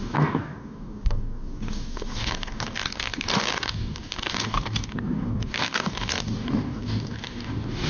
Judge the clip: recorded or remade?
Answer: remade